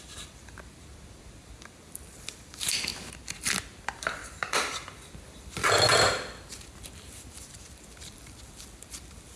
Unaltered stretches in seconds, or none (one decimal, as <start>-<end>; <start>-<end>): 2.9-3.6